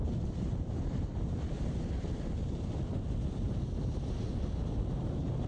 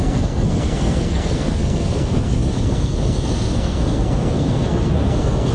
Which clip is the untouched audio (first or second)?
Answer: first